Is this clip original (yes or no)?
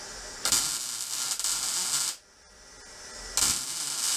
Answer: yes